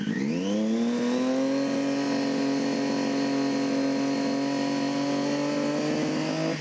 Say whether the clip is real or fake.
real